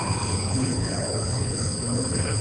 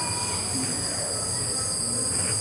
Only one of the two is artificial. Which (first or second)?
first